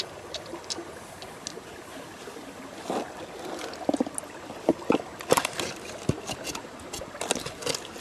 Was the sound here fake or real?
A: real